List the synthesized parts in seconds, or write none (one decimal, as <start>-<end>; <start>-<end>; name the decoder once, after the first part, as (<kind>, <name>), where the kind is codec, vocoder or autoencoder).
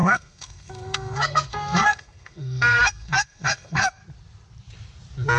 0.0-4.0 (codec, SNAC)